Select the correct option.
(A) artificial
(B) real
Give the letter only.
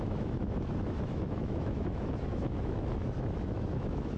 A